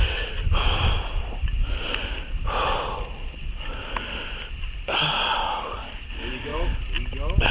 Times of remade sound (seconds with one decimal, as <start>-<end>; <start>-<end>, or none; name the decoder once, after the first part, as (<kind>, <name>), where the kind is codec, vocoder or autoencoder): none